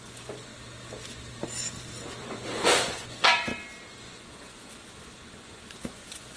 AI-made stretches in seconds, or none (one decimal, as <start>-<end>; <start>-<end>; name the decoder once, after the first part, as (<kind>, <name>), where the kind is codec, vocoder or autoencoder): 0.0-0.5 (vocoder, Vocos); 2.2-3.5; 4.0-6.4